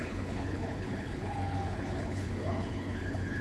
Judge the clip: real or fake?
fake